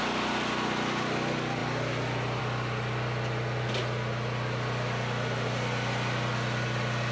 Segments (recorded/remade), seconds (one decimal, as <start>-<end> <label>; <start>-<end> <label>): 0.0-7.1 recorded